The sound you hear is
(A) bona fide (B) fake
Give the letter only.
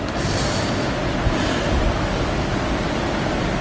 A